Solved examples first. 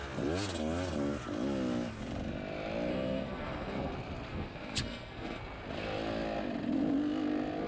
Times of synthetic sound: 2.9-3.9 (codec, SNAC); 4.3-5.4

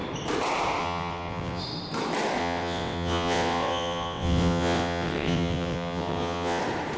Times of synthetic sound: 0.8-1.6 (vocoder, WaveNeXt); 2.4-6.6

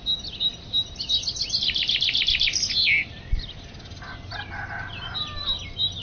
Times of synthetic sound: none

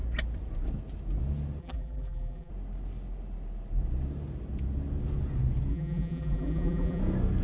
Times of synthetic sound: 1.6-2.5 (vocoder, BigVGAN v2); 5.7-7.0

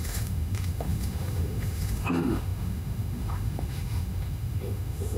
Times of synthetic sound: 0.0-5.2 (autoencoder, DAC-VAE)

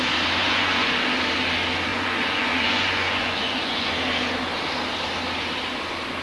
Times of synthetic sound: 0.4-0.9 (vocoder, Vocos); 1.9-3.9

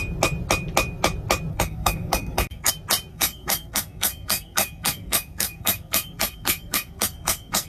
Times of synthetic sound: 1.5-2.7 (codec, SNAC); 3.1-7.7